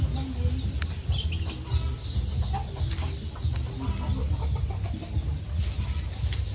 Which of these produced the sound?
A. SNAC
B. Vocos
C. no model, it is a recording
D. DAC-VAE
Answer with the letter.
C